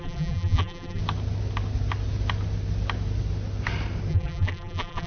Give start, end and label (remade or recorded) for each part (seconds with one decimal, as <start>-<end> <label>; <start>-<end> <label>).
0.0-1.0 remade; 1.0-4.1 recorded; 4.1-5.1 remade